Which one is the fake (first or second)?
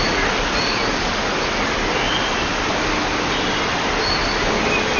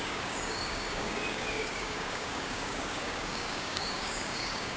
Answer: second